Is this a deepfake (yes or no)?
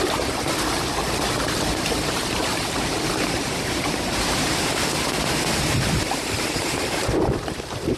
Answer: yes